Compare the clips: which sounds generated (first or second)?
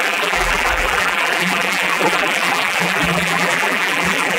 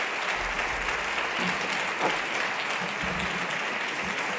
first